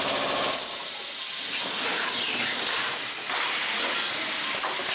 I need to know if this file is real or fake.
real